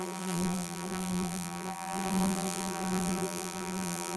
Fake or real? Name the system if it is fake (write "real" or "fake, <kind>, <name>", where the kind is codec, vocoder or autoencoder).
fake, vocoder, BigVGAN v2